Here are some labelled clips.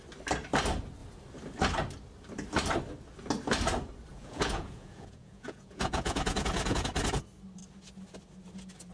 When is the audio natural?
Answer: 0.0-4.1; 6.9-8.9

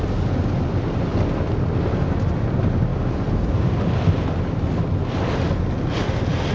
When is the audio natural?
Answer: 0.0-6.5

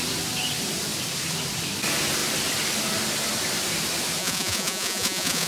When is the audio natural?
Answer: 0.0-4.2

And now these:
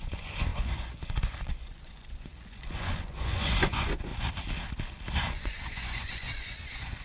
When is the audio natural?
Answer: 4.1-5.3

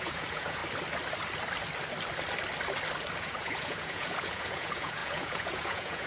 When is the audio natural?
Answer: 0.6-3.2

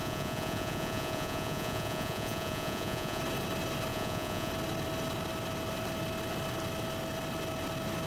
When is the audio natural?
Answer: 3.2-3.9; 4.5-8.1

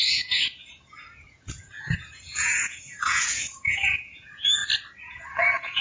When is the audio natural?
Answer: 4.6-5.1

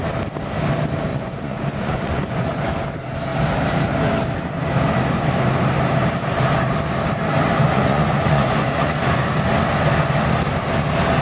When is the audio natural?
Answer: 0.0-1.1; 2.6-7.7; 9.3-11.2